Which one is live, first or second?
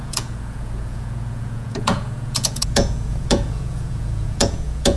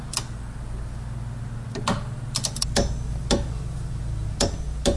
second